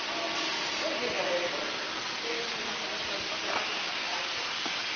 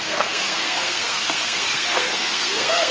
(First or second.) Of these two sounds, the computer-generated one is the second